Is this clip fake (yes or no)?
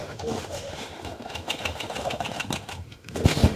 yes